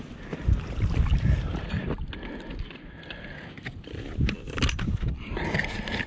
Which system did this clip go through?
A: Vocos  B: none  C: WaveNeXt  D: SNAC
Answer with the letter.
B